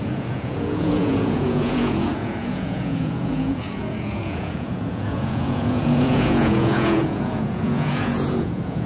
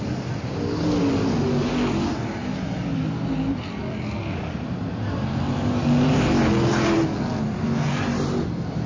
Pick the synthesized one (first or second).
first